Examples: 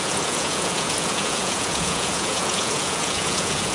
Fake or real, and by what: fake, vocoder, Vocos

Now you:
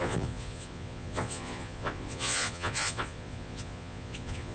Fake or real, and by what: fake, vocoder, Vocos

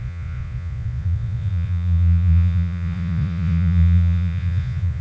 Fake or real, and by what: fake, vocoder, Vocos